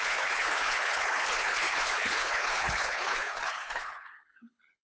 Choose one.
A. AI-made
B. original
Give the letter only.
A